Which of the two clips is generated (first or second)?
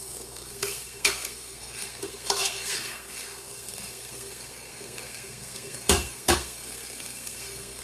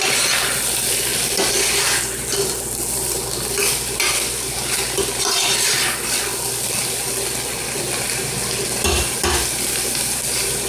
first